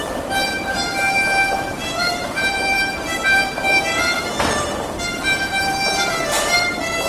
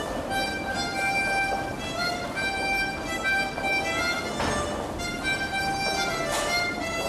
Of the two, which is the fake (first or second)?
first